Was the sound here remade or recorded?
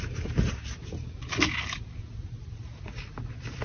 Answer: recorded